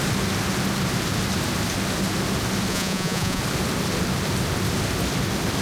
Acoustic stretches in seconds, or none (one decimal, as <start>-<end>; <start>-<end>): 0.0-2.7; 3.4-5.6